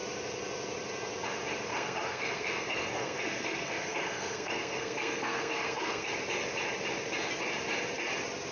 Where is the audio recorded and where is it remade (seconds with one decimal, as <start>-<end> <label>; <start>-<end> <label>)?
0.0-1.7 recorded; 1.7-6.1 remade; 6.1-8.5 recorded